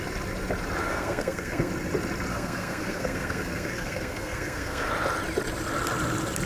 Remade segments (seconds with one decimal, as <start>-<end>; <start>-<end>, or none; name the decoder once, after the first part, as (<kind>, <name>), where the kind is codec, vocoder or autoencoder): 0.8-1.7 (codec, SNAC); 2.3-4.9